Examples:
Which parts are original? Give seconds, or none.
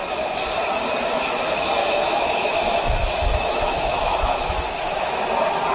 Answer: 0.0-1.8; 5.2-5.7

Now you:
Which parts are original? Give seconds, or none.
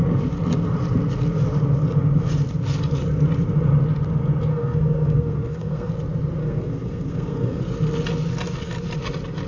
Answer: 0.0-4.5; 5.9-6.4; 7.6-9.5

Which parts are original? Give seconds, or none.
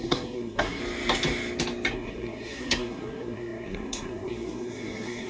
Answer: 0.8-1.9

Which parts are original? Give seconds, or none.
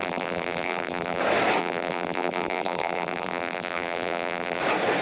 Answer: 1.2-1.6; 4.6-5.0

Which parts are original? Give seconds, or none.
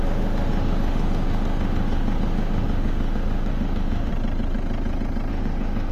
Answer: 4.1-5.3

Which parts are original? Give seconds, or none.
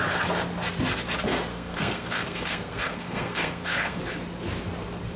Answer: 0.0-1.5; 4.0-5.2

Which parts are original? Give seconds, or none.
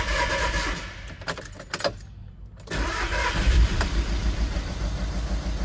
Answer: 0.0-2.2; 4.7-5.6